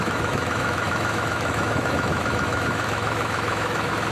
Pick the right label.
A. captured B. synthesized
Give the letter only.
B